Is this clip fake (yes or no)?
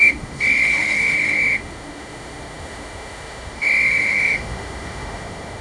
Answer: yes